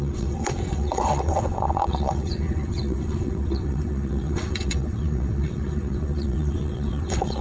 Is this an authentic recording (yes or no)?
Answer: no